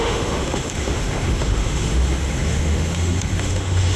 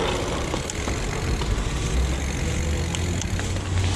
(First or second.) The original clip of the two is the second